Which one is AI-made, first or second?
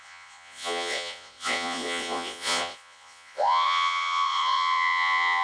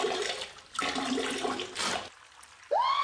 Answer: first